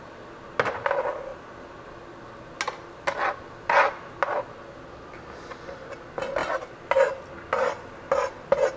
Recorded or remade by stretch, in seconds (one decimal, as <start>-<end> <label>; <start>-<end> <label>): 0.0-8.8 recorded